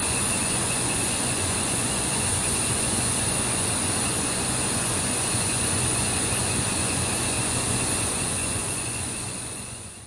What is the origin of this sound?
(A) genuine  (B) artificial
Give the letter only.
B